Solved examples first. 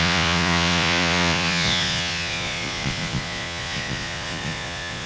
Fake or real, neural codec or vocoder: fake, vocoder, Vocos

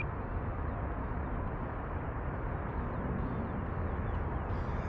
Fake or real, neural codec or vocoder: real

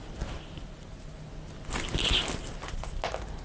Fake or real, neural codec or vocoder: real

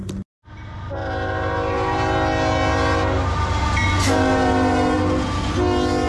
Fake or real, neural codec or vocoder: real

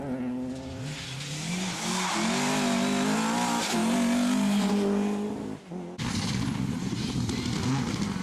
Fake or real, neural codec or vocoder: real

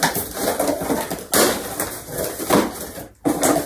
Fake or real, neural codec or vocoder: real